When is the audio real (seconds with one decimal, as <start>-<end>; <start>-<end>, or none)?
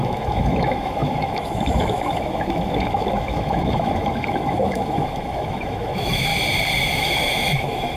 6.3-6.9